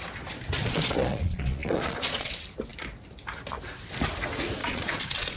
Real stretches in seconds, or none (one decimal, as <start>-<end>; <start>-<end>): 0.0-0.6; 2.3-4.6